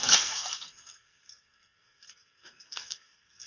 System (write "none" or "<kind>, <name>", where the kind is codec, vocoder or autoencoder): codec, SNAC